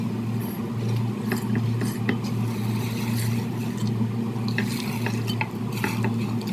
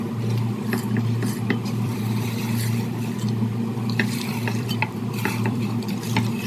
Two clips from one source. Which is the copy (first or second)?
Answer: second